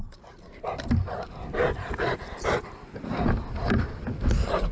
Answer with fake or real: real